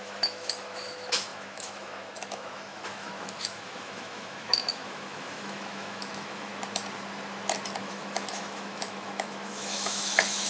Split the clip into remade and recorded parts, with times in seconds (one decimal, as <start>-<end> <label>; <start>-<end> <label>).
0.0-6.5 remade; 6.5-7.8 recorded; 7.8-10.5 remade